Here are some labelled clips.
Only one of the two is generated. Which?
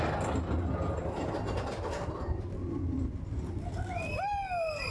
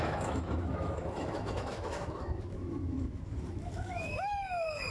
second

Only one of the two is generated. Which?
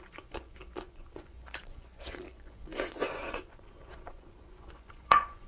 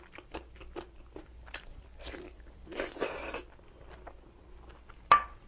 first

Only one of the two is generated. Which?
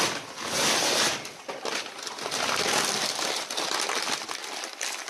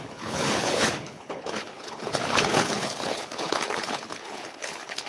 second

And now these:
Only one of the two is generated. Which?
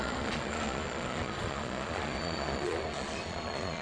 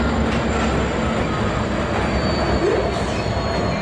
first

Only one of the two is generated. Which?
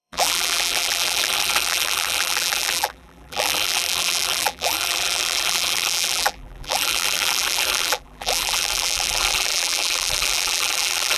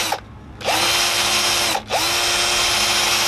first